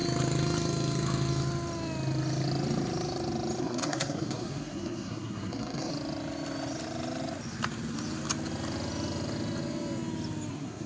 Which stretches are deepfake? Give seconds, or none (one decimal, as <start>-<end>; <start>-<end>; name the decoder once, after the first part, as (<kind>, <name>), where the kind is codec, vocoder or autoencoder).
3.6-5.9 (codec, SNAC); 10.5-10.9